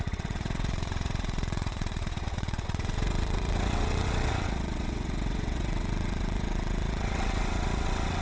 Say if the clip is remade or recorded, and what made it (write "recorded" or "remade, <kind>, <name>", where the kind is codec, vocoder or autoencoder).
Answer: remade, vocoder, WaveNeXt